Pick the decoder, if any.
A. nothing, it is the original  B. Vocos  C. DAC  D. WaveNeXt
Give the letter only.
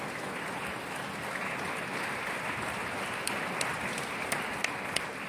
A